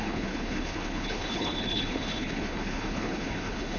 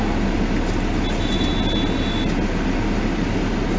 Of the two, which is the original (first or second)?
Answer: second